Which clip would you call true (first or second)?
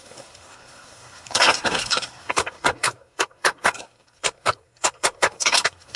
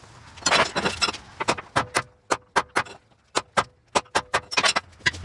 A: second